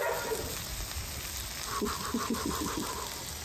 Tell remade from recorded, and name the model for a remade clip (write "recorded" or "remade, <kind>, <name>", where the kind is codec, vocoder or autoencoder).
recorded